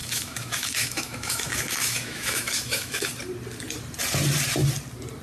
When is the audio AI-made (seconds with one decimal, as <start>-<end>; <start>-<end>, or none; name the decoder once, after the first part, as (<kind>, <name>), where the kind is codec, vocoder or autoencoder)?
0.0-3.1 (autoencoder, DAC-VAE)